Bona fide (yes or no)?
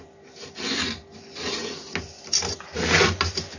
yes